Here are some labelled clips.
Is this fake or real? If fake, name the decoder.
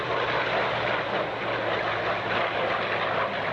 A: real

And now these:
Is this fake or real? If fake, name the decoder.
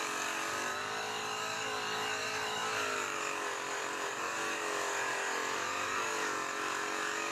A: fake, codec, DAC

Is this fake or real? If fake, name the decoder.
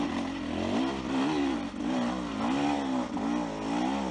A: real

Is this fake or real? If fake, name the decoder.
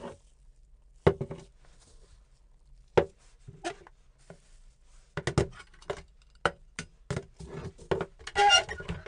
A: real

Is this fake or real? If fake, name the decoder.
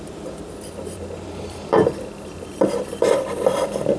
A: fake, vocoder, BigVGAN v2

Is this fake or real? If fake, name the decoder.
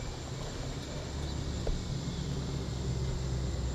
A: real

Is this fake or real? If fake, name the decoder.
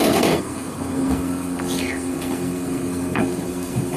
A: fake, codec, SNAC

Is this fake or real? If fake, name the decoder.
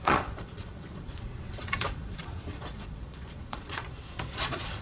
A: fake, vocoder, Vocos